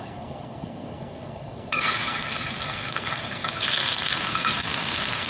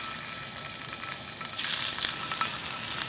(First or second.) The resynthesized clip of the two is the first